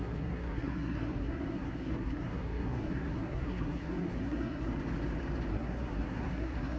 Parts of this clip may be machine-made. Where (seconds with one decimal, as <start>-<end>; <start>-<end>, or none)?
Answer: 0.0-4.7; 5.5-6.8